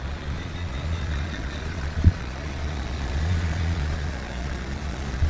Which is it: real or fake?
fake